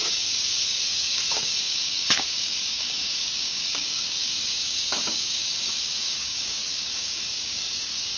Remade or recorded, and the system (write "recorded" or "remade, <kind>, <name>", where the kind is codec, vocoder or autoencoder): remade, codec, DAC